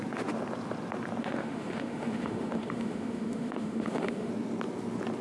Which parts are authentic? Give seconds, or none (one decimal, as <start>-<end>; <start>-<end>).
0.0-1.2; 4.3-5.2